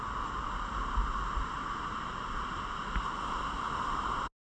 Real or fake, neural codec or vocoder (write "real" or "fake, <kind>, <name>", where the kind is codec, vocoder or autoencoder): real